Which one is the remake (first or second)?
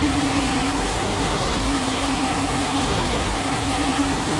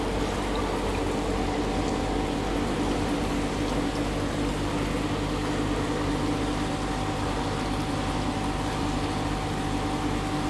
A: first